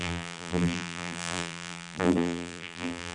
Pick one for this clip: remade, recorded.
remade